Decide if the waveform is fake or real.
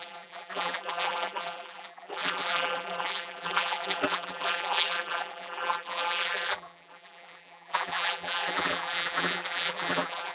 fake